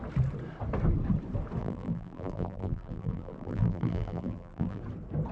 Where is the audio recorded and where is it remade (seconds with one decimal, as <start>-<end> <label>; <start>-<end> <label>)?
0.0-1.6 recorded; 1.6-4.8 remade; 4.8-5.3 recorded